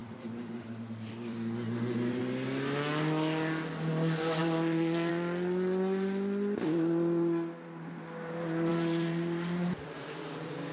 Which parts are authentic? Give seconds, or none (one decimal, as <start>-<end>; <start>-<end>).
2.2-4.4; 5.1-8.7